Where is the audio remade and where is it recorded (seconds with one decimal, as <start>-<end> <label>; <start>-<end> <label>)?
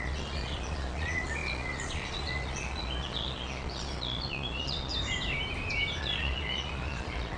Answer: 0.0-4.9 remade; 4.9-6.0 recorded; 6.0-7.4 remade